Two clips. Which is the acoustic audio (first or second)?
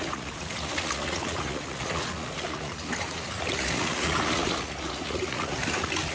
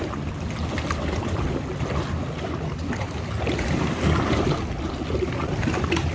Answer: second